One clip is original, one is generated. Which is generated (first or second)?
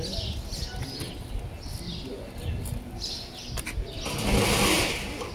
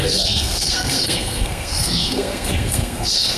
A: second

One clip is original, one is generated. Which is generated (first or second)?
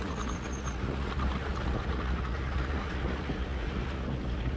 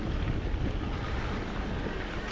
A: first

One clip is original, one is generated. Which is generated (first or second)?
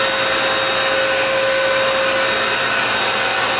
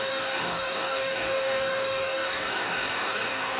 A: second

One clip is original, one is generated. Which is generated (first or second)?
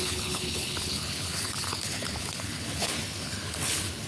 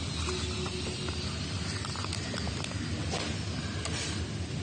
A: first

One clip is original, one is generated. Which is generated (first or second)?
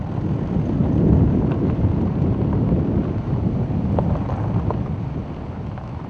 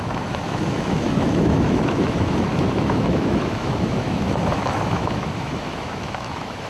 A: second